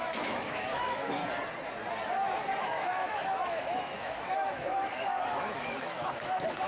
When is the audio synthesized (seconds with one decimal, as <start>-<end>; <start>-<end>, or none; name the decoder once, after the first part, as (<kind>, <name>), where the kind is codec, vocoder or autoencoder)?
0.0-1.2 (autoencoder, DAC-VAE); 2.6-6.7